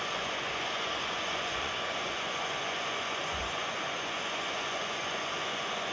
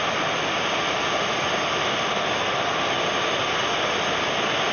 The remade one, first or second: first